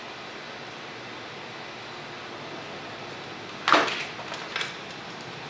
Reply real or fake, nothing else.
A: real